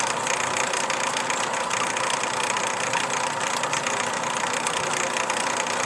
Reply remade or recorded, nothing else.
recorded